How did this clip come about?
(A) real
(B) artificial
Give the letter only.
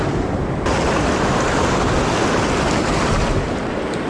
A